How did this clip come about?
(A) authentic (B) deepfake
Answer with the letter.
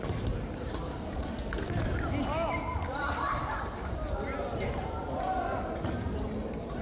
A